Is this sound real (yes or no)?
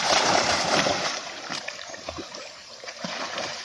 no